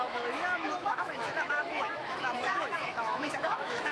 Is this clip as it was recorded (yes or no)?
no